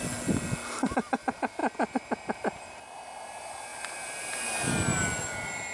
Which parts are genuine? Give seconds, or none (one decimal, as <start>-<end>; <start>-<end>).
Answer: 0.0-3.7; 4.7-5.7